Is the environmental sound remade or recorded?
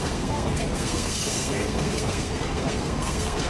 remade